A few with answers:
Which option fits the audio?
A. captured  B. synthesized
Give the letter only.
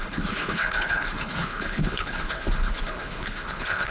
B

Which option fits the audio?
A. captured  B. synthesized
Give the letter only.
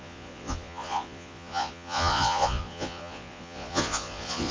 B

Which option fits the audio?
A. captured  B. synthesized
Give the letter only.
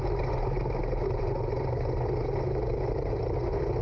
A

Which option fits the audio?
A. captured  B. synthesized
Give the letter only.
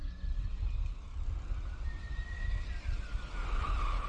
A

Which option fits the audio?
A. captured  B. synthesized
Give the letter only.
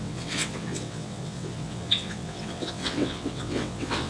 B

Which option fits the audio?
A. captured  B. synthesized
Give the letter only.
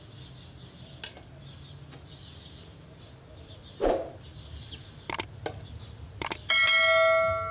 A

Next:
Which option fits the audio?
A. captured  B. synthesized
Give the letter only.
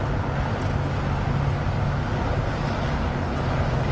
A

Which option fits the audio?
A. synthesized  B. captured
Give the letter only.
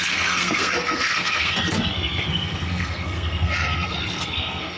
A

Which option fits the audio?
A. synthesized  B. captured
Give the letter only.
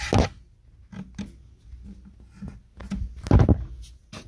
B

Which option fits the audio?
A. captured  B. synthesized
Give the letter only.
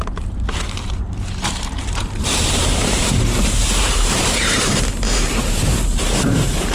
B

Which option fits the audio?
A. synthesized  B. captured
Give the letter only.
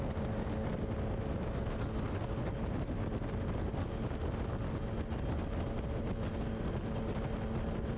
B